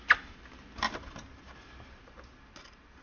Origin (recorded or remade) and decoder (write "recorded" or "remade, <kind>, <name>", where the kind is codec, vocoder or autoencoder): recorded